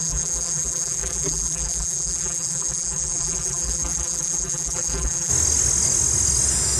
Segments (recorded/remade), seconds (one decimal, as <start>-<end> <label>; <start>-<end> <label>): 0.0-5.3 remade; 5.3-6.8 recorded